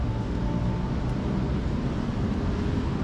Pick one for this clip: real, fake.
real